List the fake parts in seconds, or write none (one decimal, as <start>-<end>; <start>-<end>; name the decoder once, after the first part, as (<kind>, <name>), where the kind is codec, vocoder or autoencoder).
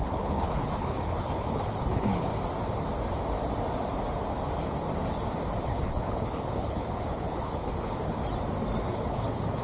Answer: 0.0-2.3 (codec, HILCodec); 5.6-8.2; 8.9-9.6